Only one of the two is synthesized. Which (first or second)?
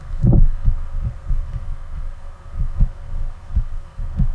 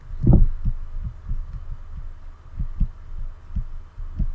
first